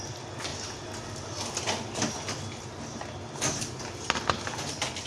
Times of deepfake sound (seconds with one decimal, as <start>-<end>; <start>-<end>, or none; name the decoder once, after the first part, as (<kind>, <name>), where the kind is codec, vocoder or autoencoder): none